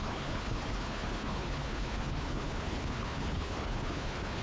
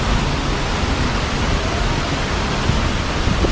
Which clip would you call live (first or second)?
second